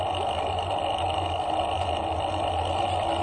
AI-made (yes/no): no